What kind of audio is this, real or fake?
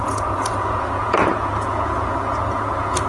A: fake